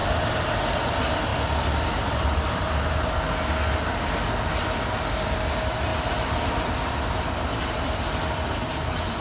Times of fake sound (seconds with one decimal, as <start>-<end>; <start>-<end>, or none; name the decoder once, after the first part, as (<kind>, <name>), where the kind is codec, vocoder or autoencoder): 1.3-3.1 (vocoder, BigVGAN v2)